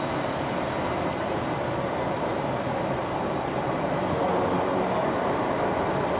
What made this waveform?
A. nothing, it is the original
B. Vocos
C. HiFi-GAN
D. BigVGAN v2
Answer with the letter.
A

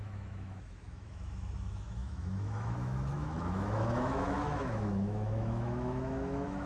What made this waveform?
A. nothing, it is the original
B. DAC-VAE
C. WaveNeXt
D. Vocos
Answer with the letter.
B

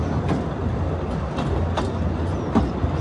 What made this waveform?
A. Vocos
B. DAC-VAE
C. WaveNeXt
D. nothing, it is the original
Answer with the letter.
D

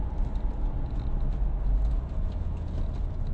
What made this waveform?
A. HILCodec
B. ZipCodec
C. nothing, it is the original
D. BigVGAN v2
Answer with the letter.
C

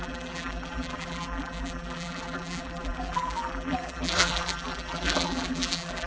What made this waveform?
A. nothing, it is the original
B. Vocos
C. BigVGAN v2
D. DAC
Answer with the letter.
C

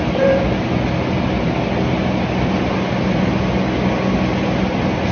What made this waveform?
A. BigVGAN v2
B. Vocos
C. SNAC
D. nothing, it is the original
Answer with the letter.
D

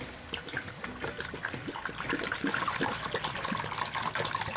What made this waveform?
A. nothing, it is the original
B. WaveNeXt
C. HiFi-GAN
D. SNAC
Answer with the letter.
A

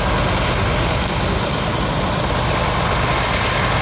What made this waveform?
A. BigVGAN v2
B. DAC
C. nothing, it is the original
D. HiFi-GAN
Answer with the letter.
C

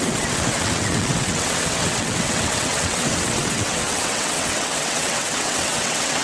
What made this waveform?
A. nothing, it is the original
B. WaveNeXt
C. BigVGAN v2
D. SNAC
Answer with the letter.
B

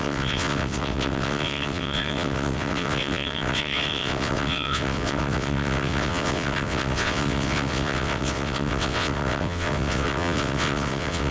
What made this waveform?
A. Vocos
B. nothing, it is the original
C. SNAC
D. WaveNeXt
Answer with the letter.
D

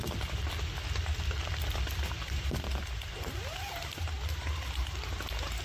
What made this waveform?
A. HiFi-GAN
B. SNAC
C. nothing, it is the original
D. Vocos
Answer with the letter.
C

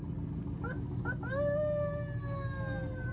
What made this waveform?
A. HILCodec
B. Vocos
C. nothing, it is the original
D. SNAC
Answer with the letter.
C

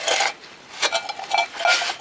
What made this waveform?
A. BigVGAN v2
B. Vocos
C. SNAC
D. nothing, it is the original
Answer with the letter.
D